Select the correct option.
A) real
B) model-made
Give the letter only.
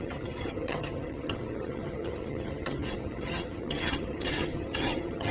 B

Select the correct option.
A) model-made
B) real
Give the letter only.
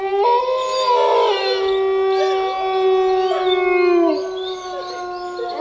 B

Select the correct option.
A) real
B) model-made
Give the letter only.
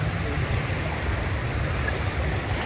A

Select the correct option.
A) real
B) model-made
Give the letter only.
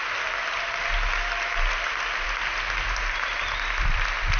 A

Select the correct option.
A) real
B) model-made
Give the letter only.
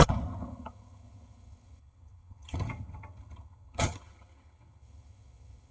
B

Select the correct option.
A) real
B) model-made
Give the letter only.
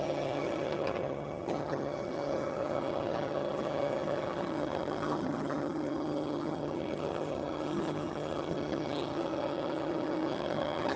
B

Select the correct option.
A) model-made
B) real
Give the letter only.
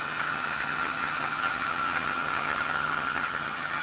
A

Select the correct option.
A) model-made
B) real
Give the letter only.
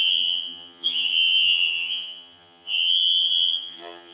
A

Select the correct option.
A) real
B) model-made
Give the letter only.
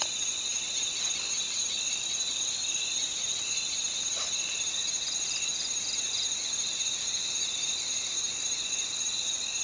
A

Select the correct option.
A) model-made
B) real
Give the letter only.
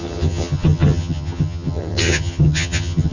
A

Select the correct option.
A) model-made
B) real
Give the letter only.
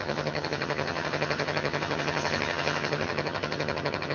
A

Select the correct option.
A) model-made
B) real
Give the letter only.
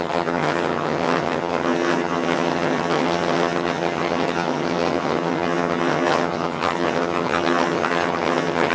A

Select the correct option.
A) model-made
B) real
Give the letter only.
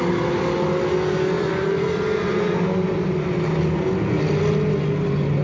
B